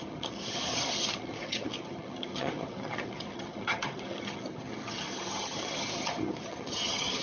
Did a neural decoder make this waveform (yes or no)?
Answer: yes